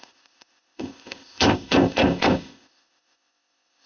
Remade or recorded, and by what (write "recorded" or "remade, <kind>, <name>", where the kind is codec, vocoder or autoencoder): remade, codec, ZipCodec